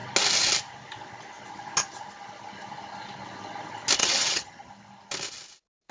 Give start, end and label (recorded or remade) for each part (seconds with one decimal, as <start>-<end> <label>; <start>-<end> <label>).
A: 0.0-4.0 recorded; 4.0-4.7 remade; 4.7-5.9 recorded